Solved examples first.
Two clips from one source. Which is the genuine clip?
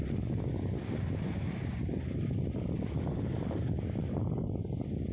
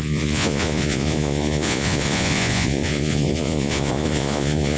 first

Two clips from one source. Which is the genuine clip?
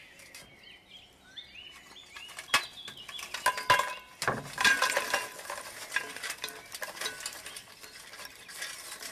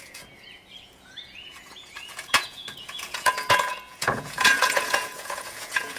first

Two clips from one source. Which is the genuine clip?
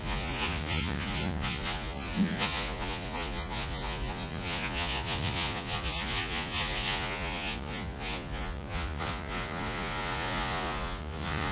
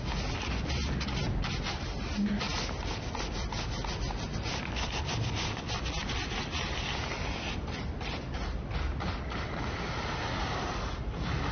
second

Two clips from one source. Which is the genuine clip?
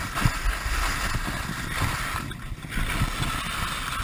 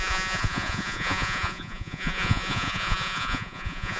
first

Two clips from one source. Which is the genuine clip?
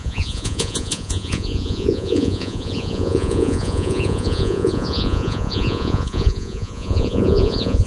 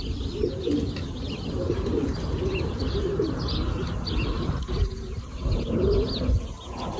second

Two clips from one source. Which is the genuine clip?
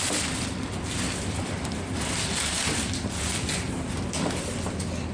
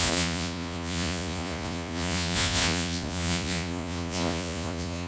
first